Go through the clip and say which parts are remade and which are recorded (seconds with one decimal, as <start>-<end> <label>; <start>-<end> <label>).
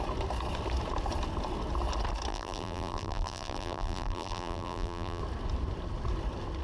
0.0-2.3 recorded; 2.3-5.2 remade; 5.2-6.6 recorded